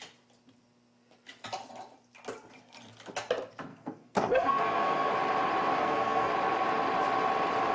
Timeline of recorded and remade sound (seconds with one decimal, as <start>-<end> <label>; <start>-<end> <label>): 0.0-3.7 recorded; 3.7-5.1 remade; 5.1-5.8 recorded; 5.8-6.3 remade; 6.3-7.7 recorded